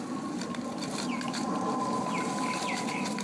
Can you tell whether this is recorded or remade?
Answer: remade